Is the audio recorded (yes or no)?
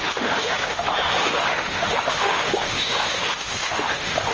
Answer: no